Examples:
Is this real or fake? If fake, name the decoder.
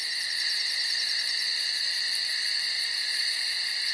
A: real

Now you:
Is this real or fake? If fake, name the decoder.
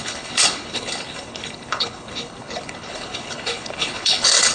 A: fake, codec, HILCodec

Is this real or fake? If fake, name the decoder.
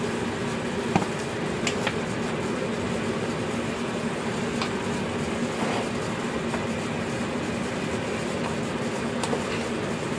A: real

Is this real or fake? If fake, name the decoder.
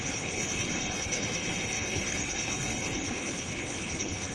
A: fake, codec, HILCodec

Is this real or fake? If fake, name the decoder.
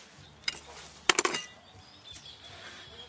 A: real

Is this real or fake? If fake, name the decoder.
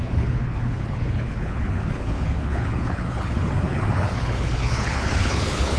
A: fake, codec, HILCodec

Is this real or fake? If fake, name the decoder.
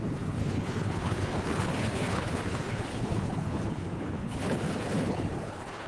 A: fake, codec, HILCodec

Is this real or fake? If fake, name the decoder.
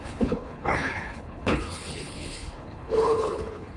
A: fake, codec, HILCodec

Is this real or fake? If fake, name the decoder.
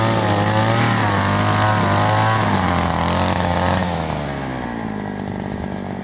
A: real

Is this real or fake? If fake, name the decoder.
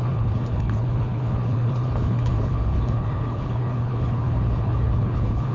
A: fake, codec, HILCodec